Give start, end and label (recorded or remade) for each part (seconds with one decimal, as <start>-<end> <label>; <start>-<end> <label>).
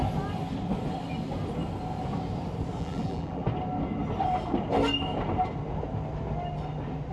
0.0-2.8 recorded; 2.8-3.4 remade; 3.4-7.1 recorded